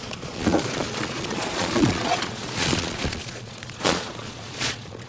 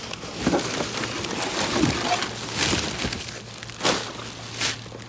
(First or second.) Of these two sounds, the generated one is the first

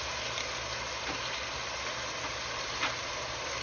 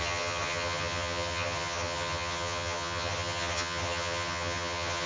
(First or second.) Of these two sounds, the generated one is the second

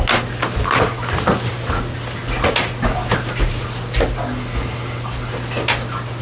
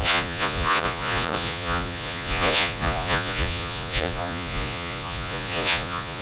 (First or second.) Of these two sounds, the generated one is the second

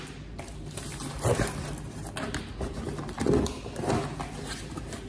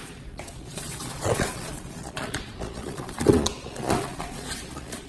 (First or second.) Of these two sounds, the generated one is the second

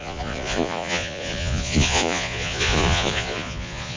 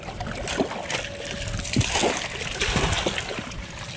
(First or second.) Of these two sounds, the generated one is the first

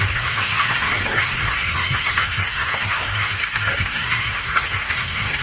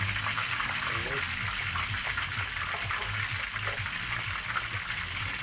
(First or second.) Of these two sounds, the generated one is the first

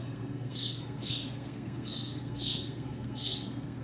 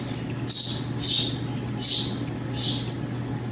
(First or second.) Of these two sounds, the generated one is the first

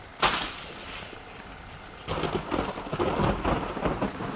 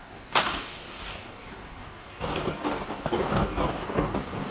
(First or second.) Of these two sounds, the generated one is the second